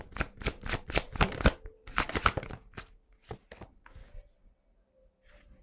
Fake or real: real